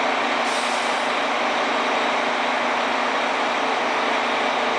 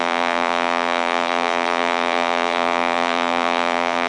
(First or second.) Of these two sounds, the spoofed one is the second